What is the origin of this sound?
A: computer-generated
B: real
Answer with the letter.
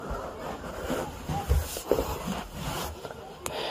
B